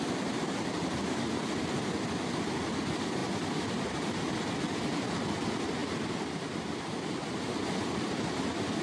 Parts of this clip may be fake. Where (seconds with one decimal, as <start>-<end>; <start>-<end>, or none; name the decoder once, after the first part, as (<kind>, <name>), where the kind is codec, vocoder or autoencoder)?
none